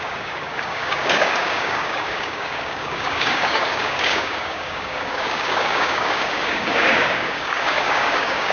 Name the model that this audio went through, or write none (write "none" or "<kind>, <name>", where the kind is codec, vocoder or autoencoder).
codec, DAC